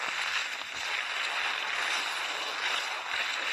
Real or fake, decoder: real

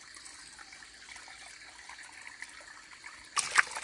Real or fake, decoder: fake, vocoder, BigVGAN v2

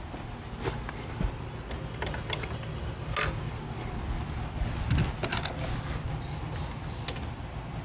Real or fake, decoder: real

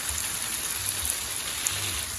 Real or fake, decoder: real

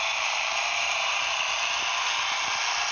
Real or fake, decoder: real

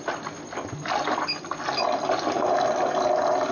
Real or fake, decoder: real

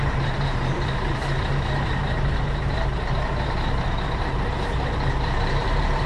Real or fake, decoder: fake, vocoder, BigVGAN v2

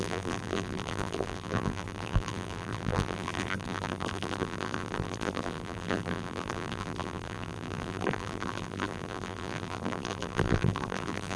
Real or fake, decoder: fake, vocoder, BigVGAN v2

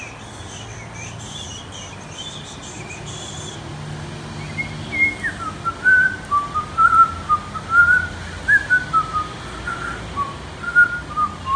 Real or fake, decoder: real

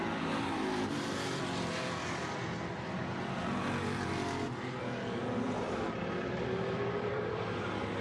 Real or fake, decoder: fake, vocoder, BigVGAN v2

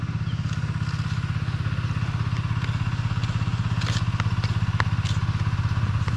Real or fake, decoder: real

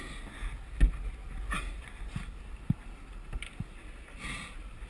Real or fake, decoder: real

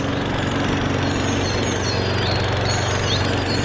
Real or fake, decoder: real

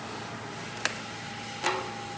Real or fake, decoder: real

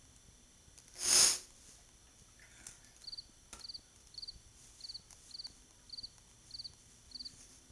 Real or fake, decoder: real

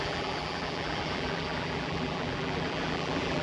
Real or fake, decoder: fake, vocoder, BigVGAN v2